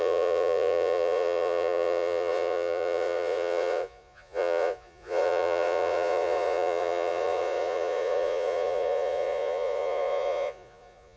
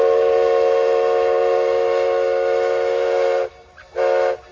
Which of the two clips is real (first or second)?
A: second